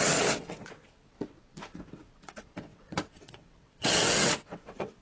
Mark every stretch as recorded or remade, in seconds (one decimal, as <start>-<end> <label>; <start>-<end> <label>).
0.0-5.0 remade